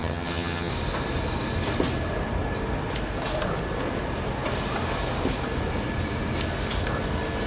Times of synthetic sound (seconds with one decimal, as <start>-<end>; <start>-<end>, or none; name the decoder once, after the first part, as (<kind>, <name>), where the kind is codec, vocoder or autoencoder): 0.0-0.7 (vocoder, HiFi-GAN)